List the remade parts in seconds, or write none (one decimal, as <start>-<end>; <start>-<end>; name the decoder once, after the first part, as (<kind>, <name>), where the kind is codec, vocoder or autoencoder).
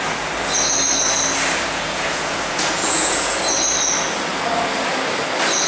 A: 1.7-3.4 (vocoder, Vocos)